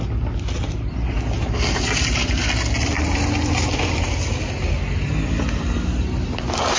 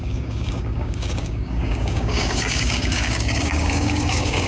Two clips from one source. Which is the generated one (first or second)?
second